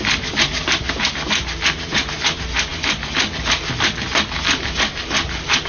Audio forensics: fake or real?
real